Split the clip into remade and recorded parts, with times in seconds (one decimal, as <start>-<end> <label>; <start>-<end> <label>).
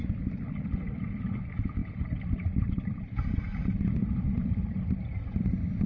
0.0-1.8 recorded; 1.8-5.3 remade; 5.3-5.9 recorded